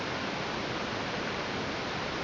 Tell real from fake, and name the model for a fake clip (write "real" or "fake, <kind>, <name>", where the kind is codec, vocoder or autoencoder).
real